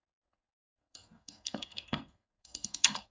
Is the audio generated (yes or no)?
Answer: yes